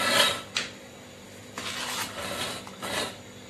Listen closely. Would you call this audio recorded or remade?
recorded